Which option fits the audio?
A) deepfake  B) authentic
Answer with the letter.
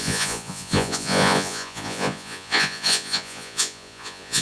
A